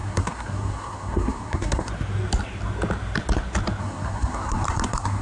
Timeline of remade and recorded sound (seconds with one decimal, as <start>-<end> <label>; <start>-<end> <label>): 0.0-1.9 remade; 1.9-3.8 recorded; 3.8-5.2 remade